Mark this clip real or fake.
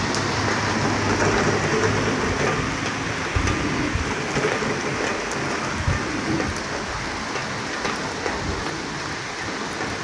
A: real